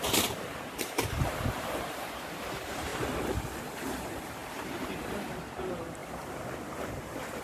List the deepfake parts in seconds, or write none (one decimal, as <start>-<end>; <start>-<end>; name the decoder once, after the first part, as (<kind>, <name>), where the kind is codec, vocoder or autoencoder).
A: 0.0-2.9 (vocoder, BigVGAN v2); 3.6-6.0; 6.6-7.4